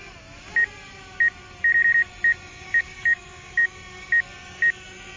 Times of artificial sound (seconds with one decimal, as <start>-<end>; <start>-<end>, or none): 2.8-3.7